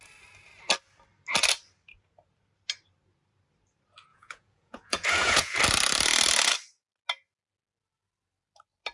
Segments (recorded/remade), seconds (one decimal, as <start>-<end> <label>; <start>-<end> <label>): 0.0-4.1 recorded; 4.1-5.6 remade; 5.6-8.9 recorded